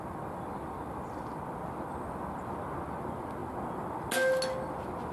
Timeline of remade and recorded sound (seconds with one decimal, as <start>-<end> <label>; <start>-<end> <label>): 0.0-5.1 recorded